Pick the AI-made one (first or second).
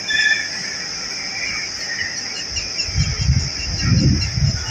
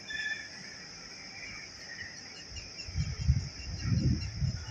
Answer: second